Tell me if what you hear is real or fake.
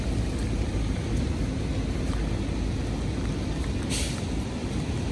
real